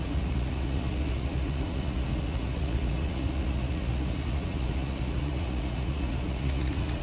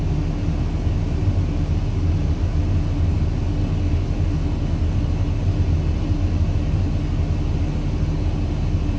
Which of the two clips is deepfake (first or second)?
first